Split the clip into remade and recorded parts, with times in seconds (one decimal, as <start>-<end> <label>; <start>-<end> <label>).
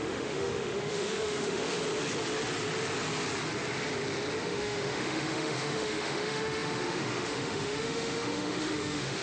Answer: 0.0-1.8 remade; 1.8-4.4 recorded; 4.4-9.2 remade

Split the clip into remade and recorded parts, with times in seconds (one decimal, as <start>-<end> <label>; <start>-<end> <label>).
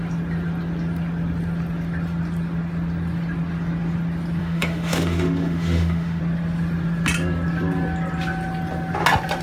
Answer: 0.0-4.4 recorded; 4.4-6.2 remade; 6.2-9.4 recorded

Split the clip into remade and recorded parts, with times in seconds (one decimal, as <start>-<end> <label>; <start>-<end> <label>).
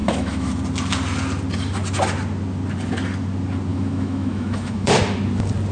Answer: 0.0-0.5 remade; 0.5-3.7 recorded; 3.7-4.9 remade; 4.9-5.7 recorded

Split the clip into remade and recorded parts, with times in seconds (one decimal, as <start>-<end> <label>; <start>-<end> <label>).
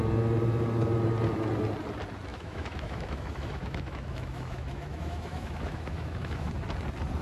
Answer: 0.0-2.3 recorded; 2.3-6.5 remade; 6.5-7.2 recorded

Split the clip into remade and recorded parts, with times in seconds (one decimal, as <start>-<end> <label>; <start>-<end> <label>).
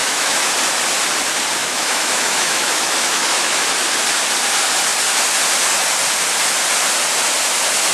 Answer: 0.0-0.5 remade; 0.5-1.6 recorded; 1.6-3.6 remade; 3.6-7.9 recorded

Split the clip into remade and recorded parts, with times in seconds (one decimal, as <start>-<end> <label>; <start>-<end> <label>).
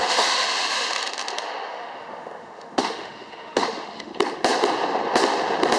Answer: 0.0-4.1 remade; 4.1-5.8 recorded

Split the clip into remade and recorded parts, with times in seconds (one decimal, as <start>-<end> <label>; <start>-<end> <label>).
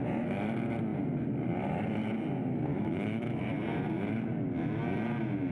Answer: 0.0-2.7 recorded; 2.7-3.4 remade; 3.4-5.5 recorded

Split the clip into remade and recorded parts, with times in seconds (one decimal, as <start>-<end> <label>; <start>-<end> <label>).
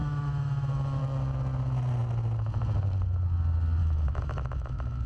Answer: 0.0-1.0 remade; 1.0-3.8 recorded; 3.8-5.1 remade